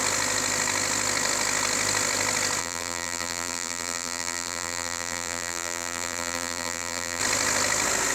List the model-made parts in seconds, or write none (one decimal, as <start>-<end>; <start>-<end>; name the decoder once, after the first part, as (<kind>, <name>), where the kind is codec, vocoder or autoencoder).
2.6-7.2 (vocoder, BigVGAN v2)